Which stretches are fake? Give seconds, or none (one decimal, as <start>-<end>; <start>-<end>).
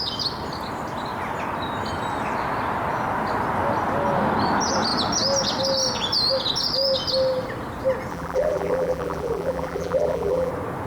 8.1-10.5